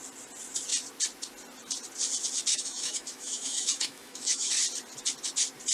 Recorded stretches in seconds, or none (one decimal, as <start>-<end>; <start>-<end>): 0.0-2.5; 4.5-5.7